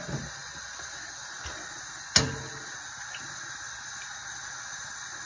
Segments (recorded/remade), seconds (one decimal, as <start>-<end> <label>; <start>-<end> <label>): 0.0-5.2 recorded